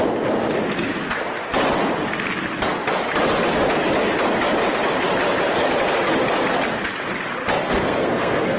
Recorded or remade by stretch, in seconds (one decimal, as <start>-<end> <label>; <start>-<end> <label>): 0.0-7.8 recorded; 7.8-8.6 remade